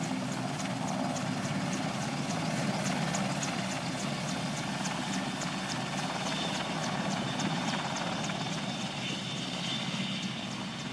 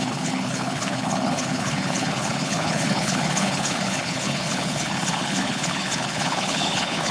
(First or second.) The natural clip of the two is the first